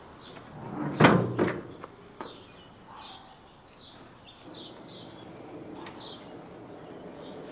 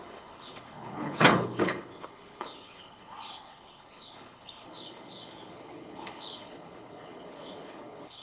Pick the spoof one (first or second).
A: second